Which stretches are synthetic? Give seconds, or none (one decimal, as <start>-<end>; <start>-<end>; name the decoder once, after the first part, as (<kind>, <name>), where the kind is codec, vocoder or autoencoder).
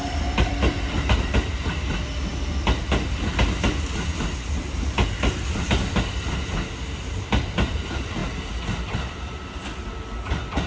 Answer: none